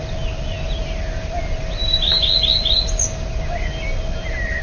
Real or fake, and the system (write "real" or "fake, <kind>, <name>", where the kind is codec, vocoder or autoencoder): real